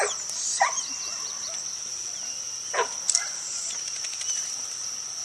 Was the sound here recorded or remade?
recorded